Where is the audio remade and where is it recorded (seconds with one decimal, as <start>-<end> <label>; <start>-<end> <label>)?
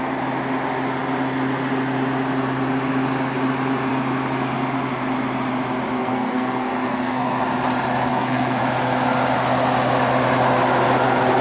0.0-6.0 recorded; 6.0-7.4 remade; 7.4-8.1 recorded; 8.1-8.6 remade; 8.6-11.4 recorded